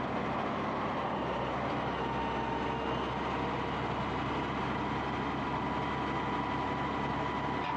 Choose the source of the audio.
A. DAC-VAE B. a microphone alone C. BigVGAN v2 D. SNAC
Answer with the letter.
B